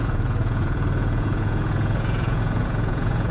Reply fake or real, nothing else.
fake